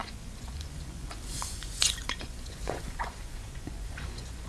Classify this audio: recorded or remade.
remade